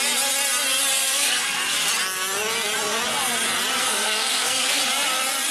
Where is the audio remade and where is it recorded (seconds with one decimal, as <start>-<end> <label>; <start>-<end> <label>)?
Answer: 0.0-1.0 recorded; 1.0-1.6 remade; 1.6-3.8 recorded; 3.8-4.8 remade; 4.8-5.5 recorded